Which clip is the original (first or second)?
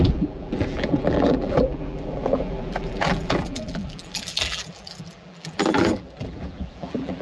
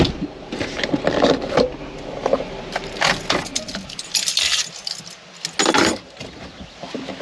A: second